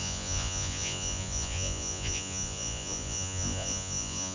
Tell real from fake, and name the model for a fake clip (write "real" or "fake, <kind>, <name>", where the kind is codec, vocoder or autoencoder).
fake, vocoder, Vocos